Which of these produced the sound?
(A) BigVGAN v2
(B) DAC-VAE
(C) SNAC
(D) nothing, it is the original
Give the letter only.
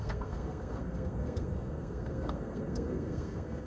C